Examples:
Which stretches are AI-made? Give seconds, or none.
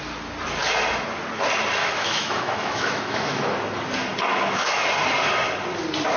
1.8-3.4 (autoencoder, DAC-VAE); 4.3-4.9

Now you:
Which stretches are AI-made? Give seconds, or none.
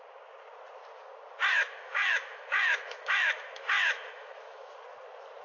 1.5-4.7 (autoencoder, DAC-VAE)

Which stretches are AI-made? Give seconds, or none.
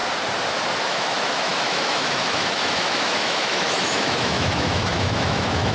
0.8-5.7 (autoencoder, DAC-VAE)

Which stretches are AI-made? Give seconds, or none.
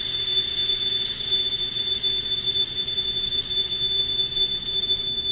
none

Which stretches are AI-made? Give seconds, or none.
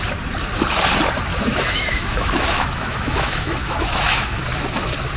1.3-4.4 (autoencoder, DAC-VAE)